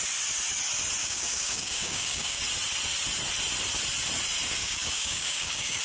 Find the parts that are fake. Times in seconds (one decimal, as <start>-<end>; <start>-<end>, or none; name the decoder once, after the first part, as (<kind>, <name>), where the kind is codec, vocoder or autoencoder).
1.0-2.4 (codec, DAC); 4.6-5.8